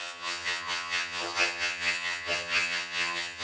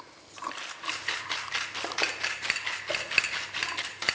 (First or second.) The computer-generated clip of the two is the first